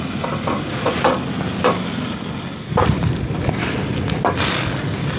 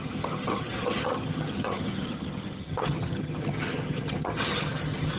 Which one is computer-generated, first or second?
second